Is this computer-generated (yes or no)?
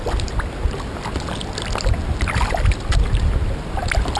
no